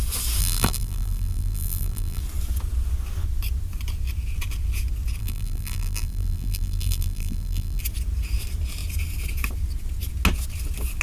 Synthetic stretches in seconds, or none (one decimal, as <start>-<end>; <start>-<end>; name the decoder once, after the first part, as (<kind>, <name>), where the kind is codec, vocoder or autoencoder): 0.4-2.2 (vocoder, BigVGAN v2); 5.2-7.8